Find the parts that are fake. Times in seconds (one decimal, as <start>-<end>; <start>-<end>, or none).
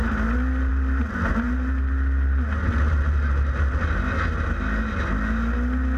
none